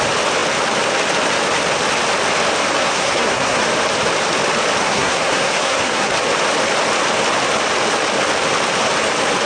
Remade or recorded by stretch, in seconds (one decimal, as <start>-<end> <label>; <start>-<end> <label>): 0.0-2.8 recorded; 2.8-3.6 remade; 3.6-4.8 recorded; 4.8-6.1 remade; 6.1-9.5 recorded